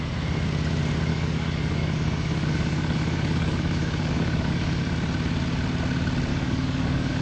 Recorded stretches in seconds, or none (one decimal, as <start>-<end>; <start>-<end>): 0.0-1.1; 4.8-6.3